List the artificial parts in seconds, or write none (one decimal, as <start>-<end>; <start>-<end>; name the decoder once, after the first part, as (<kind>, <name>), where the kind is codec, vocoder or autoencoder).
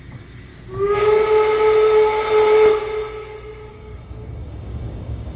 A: 0.0-0.5 (codec, DAC); 3.7-5.4